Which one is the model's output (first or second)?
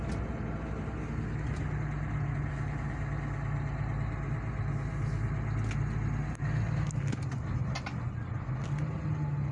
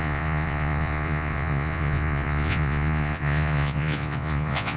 second